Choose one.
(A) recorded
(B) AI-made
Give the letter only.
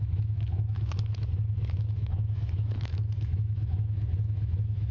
B